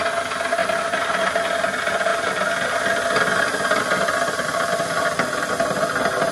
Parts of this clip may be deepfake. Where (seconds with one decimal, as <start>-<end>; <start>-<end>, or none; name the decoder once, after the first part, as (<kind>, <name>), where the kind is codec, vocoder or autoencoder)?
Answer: 0.6-1.3 (vocoder, BigVGAN v2)